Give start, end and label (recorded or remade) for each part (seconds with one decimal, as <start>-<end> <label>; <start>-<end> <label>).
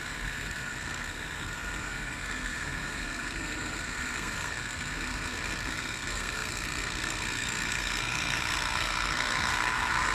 0.0-10.1 remade